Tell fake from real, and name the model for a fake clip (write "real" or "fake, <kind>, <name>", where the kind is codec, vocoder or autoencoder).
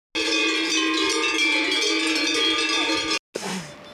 real